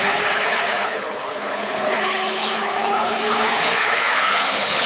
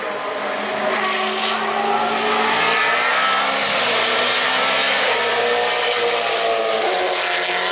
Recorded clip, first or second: second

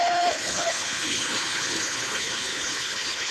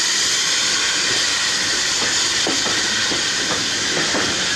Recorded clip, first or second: second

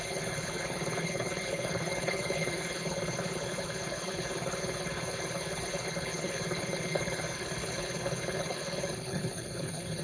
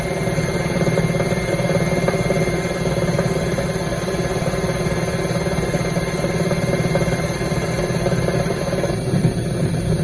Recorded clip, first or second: second